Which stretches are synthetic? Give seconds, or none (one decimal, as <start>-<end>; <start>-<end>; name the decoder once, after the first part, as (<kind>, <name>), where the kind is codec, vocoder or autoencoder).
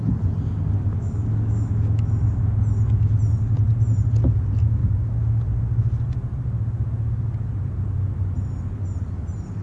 0.8-2.4 (autoencoder, DAC-VAE)